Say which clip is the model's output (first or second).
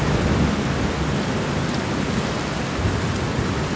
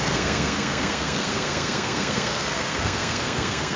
second